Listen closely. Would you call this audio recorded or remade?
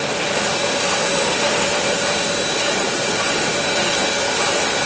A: recorded